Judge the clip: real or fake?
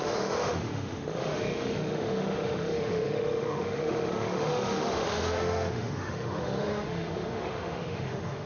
fake